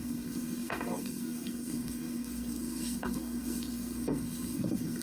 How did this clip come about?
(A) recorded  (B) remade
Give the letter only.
B